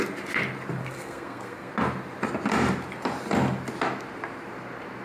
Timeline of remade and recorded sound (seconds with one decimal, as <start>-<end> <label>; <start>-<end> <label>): 0.0-0.8 recorded; 0.8-1.7 remade; 1.7-5.0 recorded